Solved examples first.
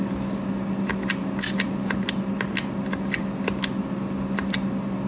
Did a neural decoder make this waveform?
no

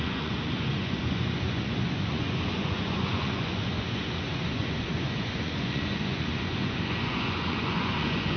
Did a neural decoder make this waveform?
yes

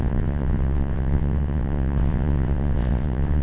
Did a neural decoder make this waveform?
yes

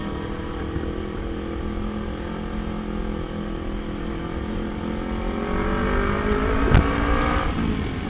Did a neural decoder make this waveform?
no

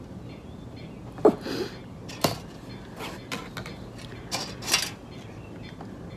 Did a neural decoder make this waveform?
no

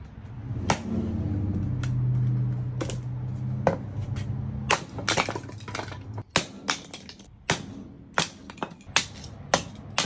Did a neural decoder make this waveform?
no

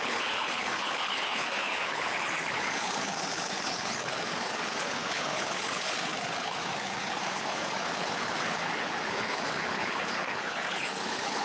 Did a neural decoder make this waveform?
yes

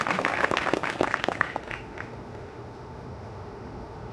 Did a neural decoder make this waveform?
yes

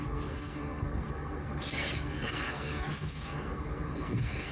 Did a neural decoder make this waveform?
yes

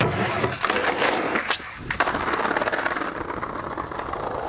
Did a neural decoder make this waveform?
no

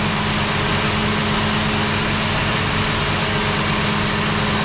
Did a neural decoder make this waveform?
no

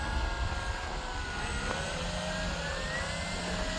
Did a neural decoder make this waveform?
no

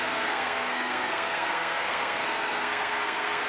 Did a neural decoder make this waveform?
yes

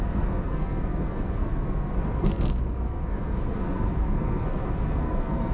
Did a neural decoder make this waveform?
yes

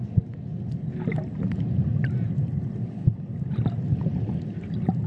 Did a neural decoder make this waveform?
no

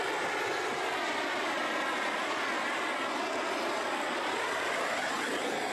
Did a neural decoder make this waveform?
no